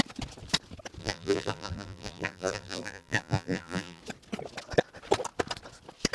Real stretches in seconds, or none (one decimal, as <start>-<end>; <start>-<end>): 0.0-1.0; 4.0-6.1